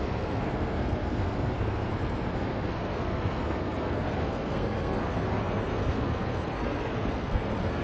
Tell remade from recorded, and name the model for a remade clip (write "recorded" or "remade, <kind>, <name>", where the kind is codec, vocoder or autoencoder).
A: remade, codec, SNAC